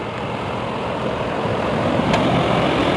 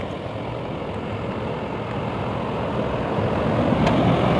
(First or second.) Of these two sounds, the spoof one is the first